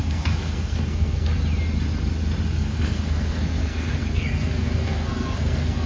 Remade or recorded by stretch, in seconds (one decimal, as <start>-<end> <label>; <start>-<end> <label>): 0.0-1.3 remade; 1.3-2.5 recorded; 2.5-5.9 remade